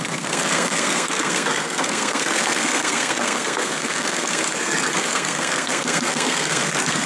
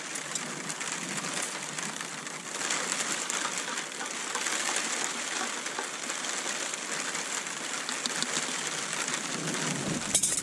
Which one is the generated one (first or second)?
first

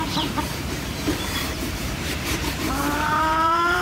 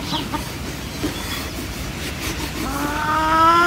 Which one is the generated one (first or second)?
first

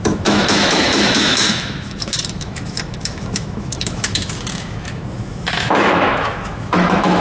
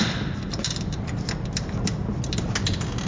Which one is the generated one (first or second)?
first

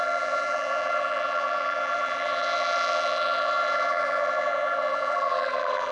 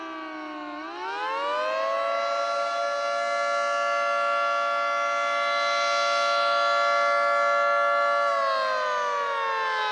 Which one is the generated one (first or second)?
first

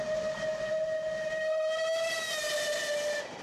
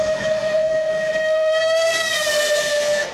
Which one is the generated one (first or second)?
second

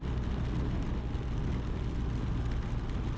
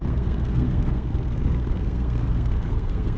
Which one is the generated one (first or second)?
second